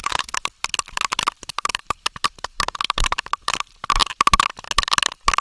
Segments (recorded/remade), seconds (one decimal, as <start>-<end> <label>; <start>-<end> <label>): 0.0-4.0 remade; 4.0-5.4 recorded